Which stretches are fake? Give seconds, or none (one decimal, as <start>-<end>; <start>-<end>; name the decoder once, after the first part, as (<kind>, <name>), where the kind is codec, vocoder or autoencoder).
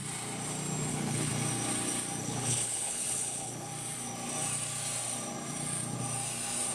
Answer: 0.9-1.3 (codec, HILCodec); 2.2-3.7